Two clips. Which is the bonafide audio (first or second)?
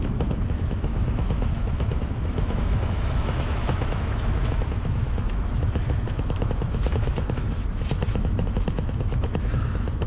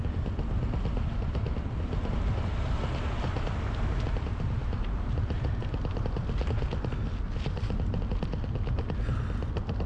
second